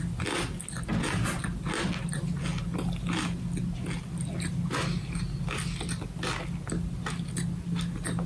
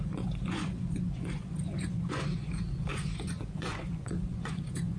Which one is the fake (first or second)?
second